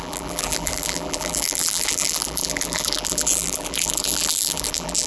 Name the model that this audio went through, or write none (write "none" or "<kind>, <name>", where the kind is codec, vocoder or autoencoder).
vocoder, BigVGAN v2